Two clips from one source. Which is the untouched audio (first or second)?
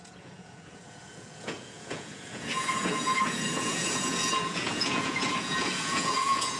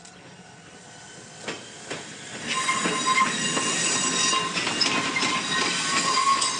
second